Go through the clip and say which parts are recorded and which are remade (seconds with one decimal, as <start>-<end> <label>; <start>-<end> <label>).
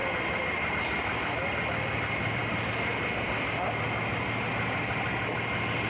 0.0-0.7 recorded; 0.7-2.4 remade; 2.4-5.9 recorded